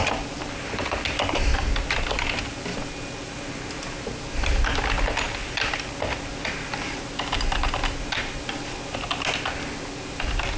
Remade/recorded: recorded